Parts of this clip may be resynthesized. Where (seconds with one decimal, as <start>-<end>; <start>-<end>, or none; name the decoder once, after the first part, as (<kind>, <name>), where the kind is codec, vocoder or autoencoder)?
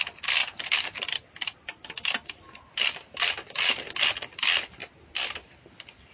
none